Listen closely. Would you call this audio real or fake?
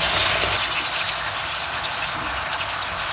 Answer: real